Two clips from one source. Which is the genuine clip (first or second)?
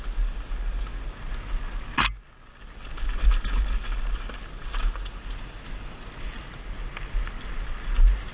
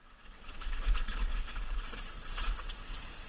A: first